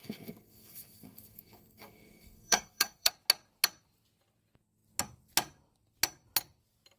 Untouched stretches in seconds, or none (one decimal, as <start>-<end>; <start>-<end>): 3.1-7.0